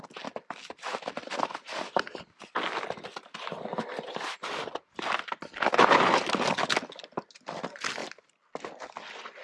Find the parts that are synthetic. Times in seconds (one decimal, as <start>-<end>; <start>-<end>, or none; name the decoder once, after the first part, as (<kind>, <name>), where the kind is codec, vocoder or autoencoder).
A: none